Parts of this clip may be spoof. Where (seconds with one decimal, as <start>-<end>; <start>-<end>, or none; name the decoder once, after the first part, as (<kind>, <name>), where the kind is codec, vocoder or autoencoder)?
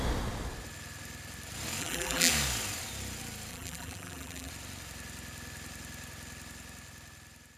1.8-2.3 (vocoder, BigVGAN v2); 3.5-4.5